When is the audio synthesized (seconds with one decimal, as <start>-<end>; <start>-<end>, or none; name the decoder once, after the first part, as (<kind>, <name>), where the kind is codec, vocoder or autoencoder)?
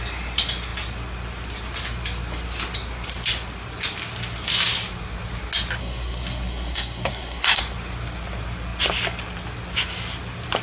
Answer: 5.8-7.6 (codec, SNAC)